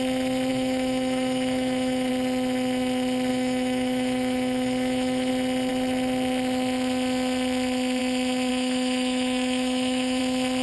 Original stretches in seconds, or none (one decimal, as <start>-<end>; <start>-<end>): 0.0-0.5; 2.1-3.3; 5.3-8.5; 10.2-10.6